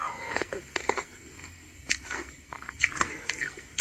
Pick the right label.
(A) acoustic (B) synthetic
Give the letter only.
B